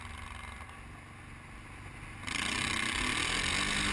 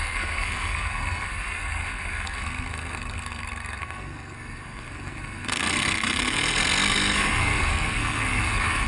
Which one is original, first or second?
first